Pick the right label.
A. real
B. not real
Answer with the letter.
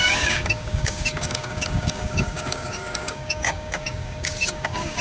B